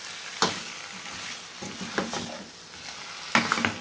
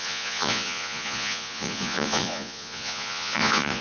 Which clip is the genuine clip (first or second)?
first